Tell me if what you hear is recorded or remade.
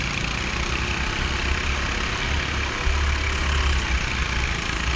recorded